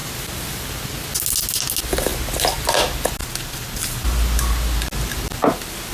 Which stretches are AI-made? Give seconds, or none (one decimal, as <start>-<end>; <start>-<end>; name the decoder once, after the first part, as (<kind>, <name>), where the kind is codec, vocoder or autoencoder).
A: none